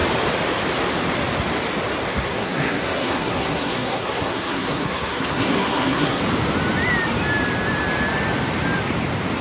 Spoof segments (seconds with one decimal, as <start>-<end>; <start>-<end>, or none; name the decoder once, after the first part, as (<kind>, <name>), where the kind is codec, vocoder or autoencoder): 2.1-6.2 (codec, SNAC)